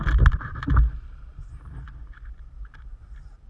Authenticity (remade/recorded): remade